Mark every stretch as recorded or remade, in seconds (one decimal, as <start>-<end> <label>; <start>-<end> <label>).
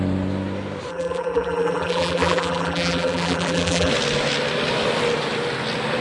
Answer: 0.0-0.9 recorded; 0.9-3.9 remade; 3.9-6.0 recorded